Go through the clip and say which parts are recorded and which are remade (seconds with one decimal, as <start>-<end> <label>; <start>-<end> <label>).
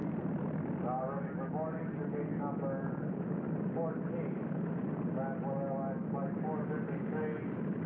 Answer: 0.0-7.9 recorded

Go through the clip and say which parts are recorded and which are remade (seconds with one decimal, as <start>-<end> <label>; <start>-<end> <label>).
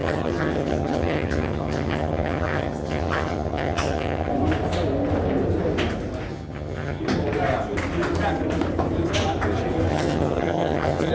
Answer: 0.0-4.3 remade; 4.3-6.3 recorded; 6.3-7.0 remade; 7.0-9.9 recorded; 9.9-11.1 remade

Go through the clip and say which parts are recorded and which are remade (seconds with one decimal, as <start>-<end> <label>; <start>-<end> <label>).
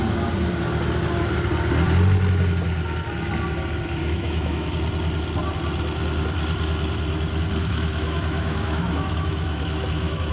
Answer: 0.0-4.0 recorded; 4.0-4.7 remade; 4.7-7.6 recorded; 7.6-10.3 remade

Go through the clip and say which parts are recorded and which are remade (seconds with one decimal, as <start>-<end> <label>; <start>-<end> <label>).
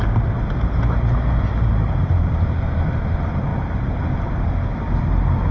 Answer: 0.0-5.5 recorded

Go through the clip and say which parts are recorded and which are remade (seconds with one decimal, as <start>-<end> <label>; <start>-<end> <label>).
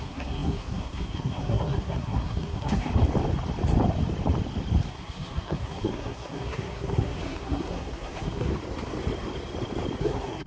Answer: 0.0-2.9 remade; 2.9-4.9 recorded; 4.9-8.5 remade; 8.5-10.0 recorded; 10.0-10.5 remade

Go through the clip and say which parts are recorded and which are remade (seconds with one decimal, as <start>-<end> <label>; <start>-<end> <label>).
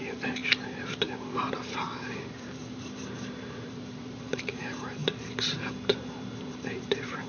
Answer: 0.0-0.4 remade; 0.4-1.4 recorded; 1.4-5.0 remade; 5.0-6.4 recorded; 6.4-7.3 remade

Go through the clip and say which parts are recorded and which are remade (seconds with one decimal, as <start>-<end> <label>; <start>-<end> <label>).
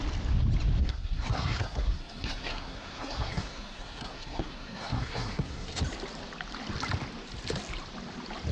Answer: 0.0-0.8 recorded; 0.8-5.8 remade; 5.8-8.5 recorded